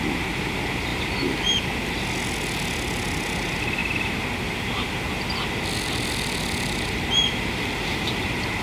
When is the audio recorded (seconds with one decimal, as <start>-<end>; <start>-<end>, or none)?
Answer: 0.0-0.9; 1.6-8.6